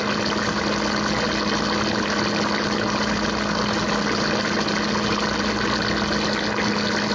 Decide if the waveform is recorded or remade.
recorded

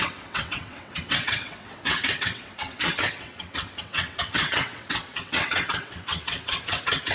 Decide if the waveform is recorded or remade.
remade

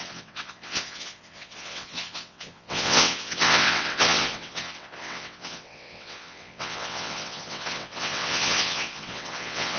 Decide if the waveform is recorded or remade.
remade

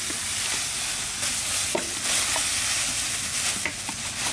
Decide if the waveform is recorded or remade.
recorded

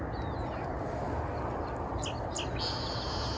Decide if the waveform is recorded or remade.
recorded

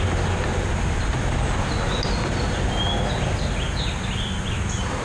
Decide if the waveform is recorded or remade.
recorded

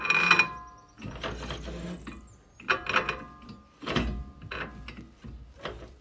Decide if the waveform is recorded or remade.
recorded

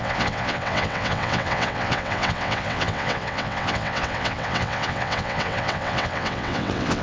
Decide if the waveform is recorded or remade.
remade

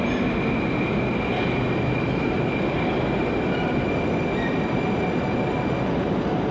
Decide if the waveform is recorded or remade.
recorded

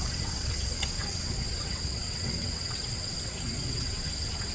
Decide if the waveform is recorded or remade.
remade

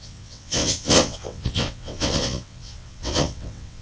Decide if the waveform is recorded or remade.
remade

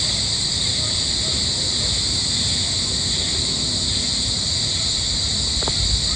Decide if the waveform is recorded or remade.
recorded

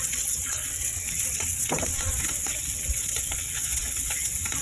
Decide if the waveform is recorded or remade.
remade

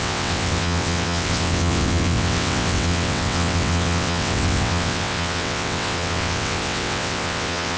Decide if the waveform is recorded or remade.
remade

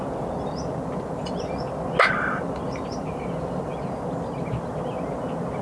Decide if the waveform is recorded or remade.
recorded